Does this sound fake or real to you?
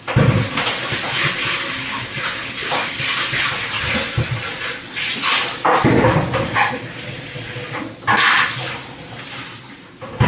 real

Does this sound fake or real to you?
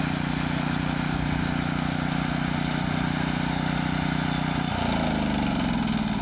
real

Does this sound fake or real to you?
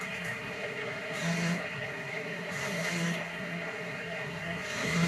fake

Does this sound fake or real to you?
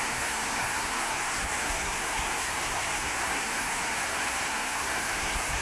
fake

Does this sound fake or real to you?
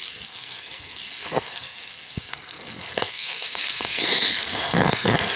fake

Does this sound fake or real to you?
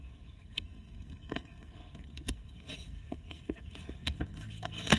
fake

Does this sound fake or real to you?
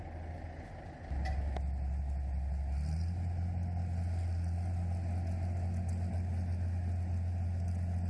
real